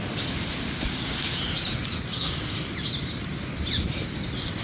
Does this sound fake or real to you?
real